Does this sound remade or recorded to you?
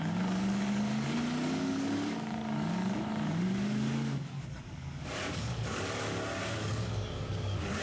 remade